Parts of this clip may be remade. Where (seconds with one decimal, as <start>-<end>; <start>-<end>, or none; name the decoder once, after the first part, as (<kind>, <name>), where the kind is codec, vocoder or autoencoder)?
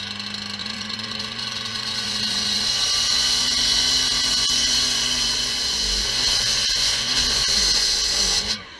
0.6-3.9 (vocoder, Vocos); 4.3-8.8